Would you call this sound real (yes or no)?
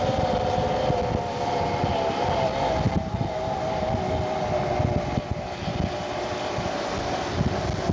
yes